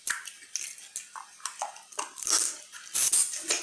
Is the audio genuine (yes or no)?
yes